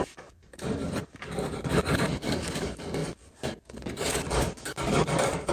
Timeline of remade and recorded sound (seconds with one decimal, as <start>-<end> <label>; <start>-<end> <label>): 0.0-5.5 remade